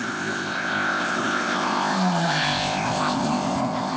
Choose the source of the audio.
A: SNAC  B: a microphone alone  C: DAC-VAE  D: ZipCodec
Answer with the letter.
D